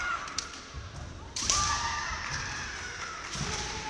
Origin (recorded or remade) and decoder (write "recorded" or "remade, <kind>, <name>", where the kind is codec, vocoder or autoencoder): remade, vocoder, BigVGAN v2